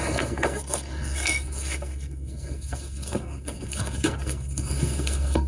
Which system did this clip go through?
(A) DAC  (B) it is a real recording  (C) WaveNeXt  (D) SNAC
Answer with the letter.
D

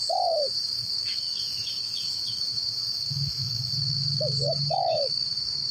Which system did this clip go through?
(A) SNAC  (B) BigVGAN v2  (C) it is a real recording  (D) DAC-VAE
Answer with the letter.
D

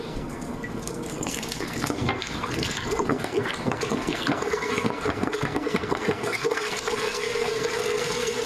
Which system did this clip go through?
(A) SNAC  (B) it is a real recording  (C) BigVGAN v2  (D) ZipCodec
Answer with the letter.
A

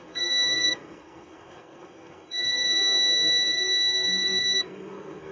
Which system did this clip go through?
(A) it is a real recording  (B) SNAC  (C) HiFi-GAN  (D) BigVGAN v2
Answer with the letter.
B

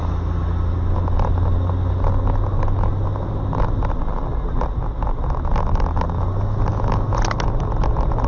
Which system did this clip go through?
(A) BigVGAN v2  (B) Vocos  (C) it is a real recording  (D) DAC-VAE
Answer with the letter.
C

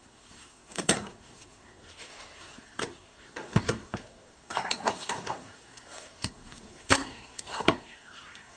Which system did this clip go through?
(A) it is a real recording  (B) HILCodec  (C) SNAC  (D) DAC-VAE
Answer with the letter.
C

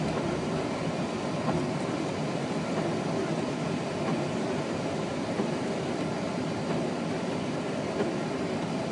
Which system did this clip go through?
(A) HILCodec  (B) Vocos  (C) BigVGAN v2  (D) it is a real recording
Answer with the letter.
D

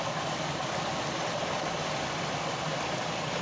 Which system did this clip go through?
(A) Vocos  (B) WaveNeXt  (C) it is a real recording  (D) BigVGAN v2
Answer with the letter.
C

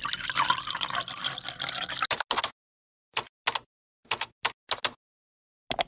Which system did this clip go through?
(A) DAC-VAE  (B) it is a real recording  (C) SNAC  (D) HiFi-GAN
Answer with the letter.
B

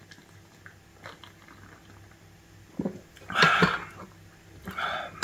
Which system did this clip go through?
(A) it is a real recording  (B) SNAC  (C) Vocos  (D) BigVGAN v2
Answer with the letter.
A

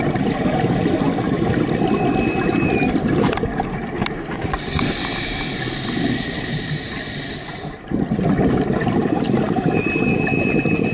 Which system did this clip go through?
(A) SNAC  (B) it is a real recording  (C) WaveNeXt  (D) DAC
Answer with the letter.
B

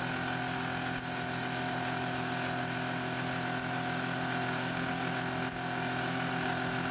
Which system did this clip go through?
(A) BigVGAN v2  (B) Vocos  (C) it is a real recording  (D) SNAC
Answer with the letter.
C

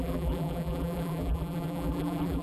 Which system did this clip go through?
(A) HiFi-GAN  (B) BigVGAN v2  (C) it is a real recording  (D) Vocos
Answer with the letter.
B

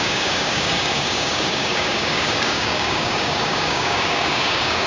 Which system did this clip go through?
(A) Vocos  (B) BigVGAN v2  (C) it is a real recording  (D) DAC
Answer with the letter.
D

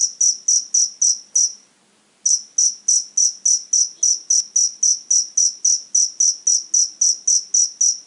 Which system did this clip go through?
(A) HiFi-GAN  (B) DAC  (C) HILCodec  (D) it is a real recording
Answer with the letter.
D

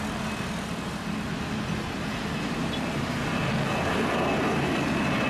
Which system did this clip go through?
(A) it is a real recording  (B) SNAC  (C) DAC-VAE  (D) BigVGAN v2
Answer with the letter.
A